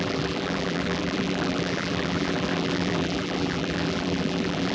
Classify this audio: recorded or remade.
remade